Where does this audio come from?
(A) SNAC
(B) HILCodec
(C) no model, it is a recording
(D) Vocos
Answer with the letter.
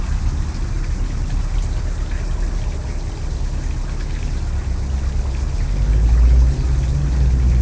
C